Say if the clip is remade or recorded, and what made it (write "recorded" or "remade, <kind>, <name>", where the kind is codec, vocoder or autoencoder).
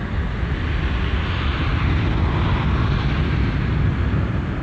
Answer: recorded